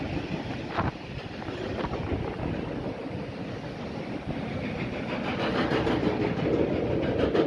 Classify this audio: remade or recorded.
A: recorded